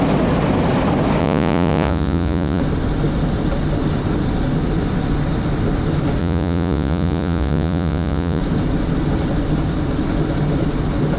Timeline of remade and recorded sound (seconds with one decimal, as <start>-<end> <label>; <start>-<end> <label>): 0.0-1.2 recorded; 1.2-2.6 remade; 2.6-6.2 recorded; 6.2-8.4 remade; 8.4-11.2 recorded